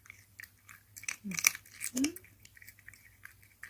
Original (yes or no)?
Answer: yes